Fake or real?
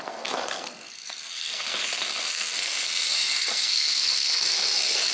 fake